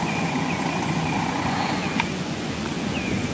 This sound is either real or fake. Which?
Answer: fake